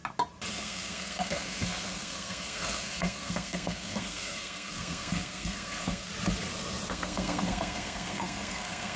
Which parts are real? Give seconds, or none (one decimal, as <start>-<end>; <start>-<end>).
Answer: 0.0-0.5; 6.1-6.9